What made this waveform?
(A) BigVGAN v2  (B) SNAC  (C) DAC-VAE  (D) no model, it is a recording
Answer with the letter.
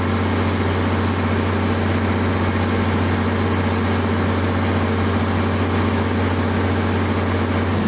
D